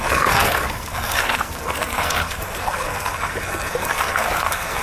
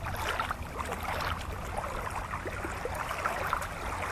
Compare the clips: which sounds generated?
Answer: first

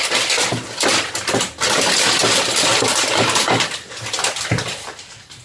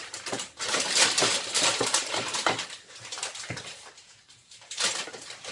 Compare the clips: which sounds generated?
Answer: second